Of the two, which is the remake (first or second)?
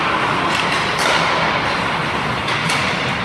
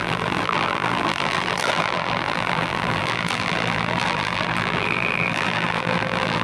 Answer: second